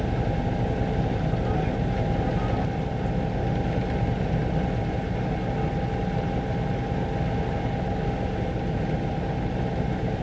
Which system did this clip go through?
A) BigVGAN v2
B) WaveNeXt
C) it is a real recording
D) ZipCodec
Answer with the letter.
C